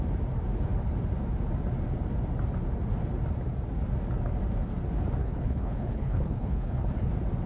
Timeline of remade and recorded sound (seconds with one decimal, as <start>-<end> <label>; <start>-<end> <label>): 0.0-5.2 recorded; 5.2-7.1 remade; 7.1-7.5 recorded